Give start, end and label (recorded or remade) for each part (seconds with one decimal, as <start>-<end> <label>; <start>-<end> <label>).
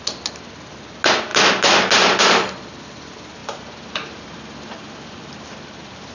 0.0-3.4 recorded; 3.4-6.1 remade